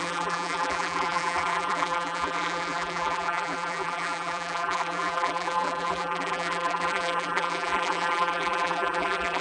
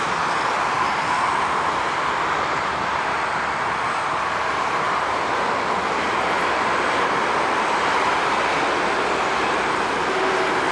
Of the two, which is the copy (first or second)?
first